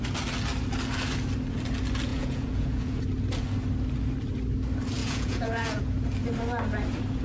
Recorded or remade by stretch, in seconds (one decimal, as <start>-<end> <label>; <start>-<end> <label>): 0.0-2.1 recorded; 2.1-3.0 remade; 3.0-5.0 recorded; 5.0-5.8 remade; 5.8-7.2 recorded